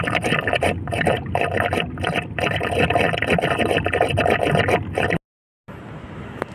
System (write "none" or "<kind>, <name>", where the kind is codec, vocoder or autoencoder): none